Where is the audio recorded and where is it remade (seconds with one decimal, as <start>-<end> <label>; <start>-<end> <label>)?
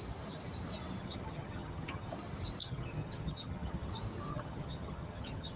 0.0-1.0 recorded; 1.0-2.1 remade; 2.1-2.6 recorded; 2.6-3.9 remade; 3.9-4.3 recorded; 4.3-5.6 remade